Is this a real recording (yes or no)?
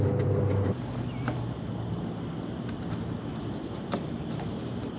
yes